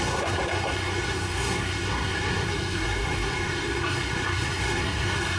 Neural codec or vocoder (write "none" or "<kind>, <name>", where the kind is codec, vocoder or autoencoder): codec, SNAC